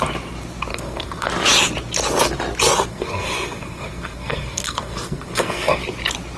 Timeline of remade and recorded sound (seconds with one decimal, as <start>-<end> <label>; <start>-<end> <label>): 0.0-0.7 recorded; 0.7-1.3 remade; 1.3-2.9 recorded; 2.9-5.8 remade; 5.8-6.4 recorded